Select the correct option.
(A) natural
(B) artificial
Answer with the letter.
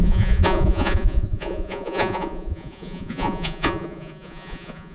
B